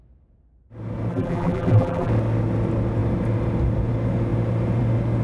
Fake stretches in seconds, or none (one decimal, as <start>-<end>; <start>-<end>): 1.1-2.1